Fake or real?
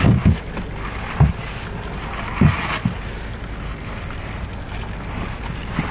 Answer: real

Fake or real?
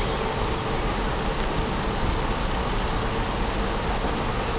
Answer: real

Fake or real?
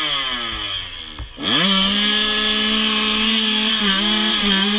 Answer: real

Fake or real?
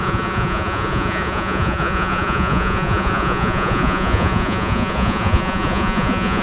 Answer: fake